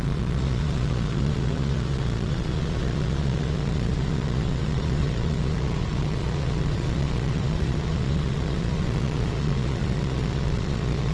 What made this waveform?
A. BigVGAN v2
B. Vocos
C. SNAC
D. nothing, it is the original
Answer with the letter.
B